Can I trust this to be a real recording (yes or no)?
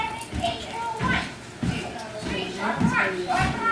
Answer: yes